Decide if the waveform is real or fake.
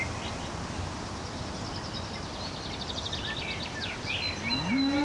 real